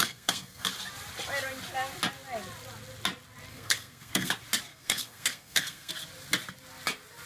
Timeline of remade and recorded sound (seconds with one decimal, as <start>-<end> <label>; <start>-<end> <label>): 0.0-0.7 remade; 0.7-3.5 recorded; 3.5-4.3 remade; 4.3-4.7 recorded; 4.7-5.9 remade; 5.9-7.3 recorded